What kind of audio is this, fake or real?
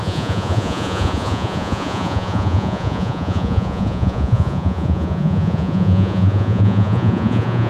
fake